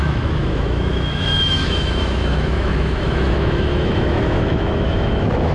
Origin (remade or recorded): remade